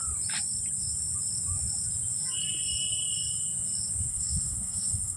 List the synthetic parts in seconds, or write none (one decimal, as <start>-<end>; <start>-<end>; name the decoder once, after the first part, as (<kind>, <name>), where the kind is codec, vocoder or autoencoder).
4.1-5.2 (codec, SNAC)